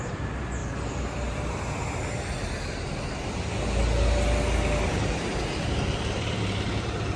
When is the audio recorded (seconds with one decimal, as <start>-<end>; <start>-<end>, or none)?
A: 0.6-4.9